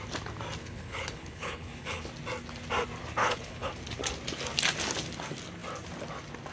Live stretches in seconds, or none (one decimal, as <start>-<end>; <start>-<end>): 0.0-0.6; 2.1-3.2; 3.7-6.5